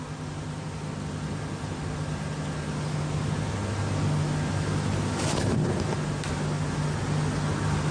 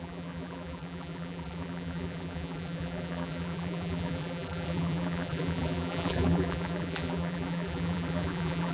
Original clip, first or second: first